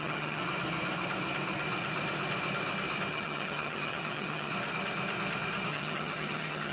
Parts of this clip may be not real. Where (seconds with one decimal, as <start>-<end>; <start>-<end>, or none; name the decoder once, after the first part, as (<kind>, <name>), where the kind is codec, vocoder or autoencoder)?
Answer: 0.0-0.4 (vocoder, HiFi-GAN); 3.1-4.5; 5.7-6.7